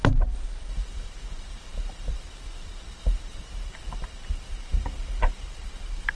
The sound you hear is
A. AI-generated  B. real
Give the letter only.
A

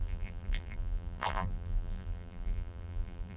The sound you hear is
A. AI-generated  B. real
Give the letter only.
A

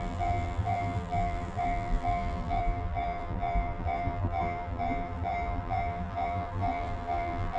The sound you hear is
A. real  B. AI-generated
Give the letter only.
B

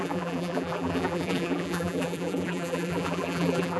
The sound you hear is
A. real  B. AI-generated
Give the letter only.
B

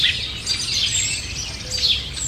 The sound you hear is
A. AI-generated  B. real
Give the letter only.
B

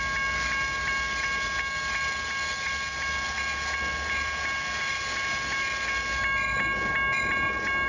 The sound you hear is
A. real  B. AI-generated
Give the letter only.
A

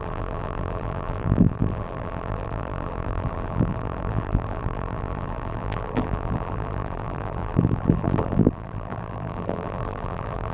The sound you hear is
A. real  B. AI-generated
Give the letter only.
B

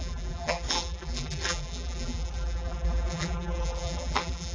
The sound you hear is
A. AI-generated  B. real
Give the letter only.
A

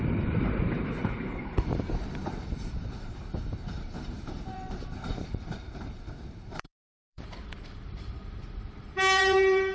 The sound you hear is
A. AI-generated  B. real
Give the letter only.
A